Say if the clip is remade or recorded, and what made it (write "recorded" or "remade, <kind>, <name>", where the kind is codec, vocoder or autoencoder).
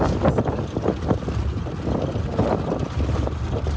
recorded